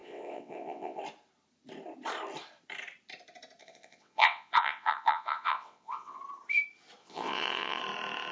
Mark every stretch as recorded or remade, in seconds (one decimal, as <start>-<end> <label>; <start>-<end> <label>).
0.0-1.0 remade; 1.0-3.6 recorded; 3.6-6.2 remade; 6.2-7.0 recorded; 7.0-7.8 remade; 7.8-8.3 recorded